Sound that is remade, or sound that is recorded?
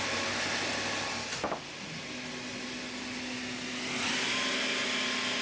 recorded